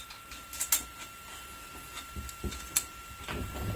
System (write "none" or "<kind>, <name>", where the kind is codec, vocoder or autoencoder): none